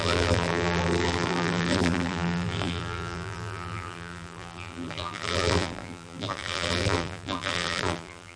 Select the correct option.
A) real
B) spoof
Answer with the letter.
B